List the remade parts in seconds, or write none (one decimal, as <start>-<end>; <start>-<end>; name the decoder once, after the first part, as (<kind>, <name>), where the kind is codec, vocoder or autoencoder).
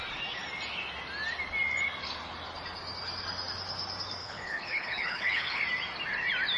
4.2-5.6 (codec, HILCodec)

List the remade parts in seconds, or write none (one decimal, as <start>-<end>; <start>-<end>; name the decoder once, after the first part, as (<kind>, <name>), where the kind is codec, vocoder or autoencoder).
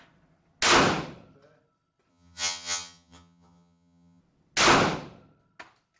2.1-4.2 (vocoder, HiFi-GAN)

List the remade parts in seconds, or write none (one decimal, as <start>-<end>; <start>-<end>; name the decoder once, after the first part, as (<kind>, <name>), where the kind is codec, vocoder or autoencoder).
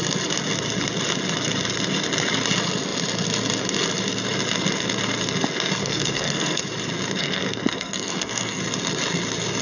5.8-6.6 (codec, SNAC); 7.2-8.6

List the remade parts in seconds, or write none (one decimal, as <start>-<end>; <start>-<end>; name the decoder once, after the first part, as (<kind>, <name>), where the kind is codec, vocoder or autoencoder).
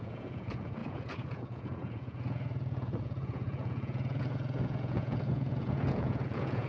0.0-6.7 (vocoder, Vocos)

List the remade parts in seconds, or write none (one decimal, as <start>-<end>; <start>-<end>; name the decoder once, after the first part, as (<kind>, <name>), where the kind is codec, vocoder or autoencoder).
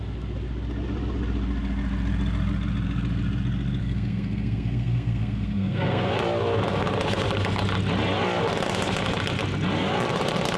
3.8-6.1 (codec, SNAC)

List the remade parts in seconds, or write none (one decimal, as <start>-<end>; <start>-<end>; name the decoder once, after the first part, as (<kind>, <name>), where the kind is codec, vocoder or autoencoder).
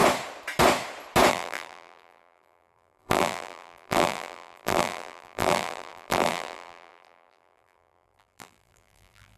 1.3-9.4 (vocoder, BigVGAN v2)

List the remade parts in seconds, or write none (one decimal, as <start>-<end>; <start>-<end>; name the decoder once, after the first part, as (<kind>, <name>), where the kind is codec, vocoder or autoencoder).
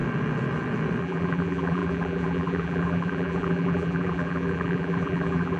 1.0-5.6 (vocoder, BigVGAN v2)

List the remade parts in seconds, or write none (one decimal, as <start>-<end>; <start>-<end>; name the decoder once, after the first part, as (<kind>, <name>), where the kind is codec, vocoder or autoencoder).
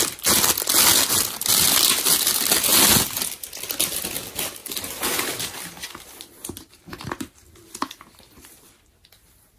4.6-9.0 (vocoder, BigVGAN v2)